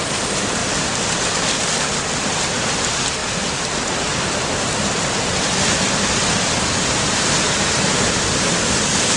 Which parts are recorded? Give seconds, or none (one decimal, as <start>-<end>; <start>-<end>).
0.0-9.2